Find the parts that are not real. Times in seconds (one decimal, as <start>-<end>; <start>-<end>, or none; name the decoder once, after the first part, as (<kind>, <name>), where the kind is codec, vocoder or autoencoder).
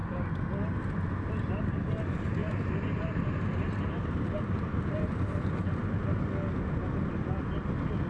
2.4-6.2 (vocoder, BigVGAN v2)